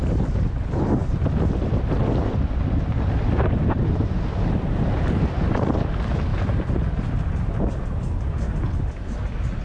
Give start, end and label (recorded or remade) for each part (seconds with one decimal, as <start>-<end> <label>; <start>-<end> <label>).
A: 0.0-1.0 recorded; 1.0-5.2 remade; 5.2-6.3 recorded; 6.3-7.7 remade; 7.7-9.6 recorded